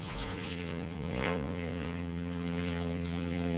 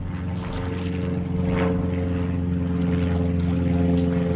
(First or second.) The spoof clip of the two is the first